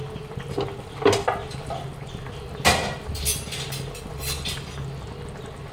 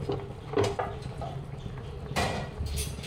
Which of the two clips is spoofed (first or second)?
second